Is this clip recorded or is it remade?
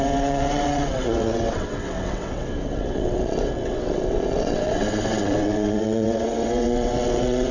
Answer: remade